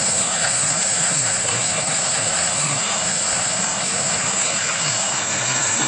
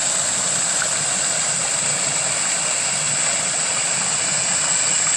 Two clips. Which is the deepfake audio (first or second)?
first